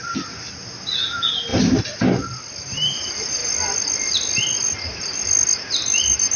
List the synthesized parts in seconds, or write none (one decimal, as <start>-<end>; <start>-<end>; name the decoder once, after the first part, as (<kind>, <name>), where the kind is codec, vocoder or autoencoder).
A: 1.5-2.1 (vocoder, BigVGAN v2); 3.4-5.3